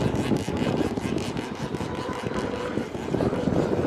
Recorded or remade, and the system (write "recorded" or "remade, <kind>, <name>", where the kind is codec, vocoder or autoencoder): remade, vocoder, BigVGAN v2